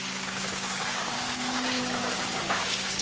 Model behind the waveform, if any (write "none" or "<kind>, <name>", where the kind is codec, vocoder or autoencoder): codec, DAC